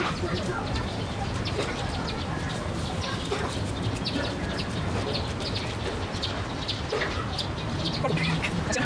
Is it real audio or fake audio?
real